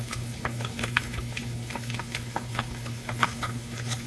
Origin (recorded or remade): remade